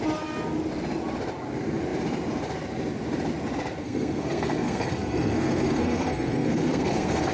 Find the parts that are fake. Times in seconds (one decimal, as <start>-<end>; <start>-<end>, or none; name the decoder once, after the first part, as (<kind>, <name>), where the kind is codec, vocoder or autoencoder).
3.8-7.3 (codec, SNAC)